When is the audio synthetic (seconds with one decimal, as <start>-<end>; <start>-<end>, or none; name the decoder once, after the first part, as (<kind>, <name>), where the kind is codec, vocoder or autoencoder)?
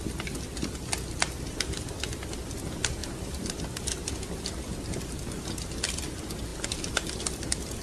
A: 3.0-3.6 (vocoder, BigVGAN v2)